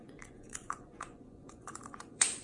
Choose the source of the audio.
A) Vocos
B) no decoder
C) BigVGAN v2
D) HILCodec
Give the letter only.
A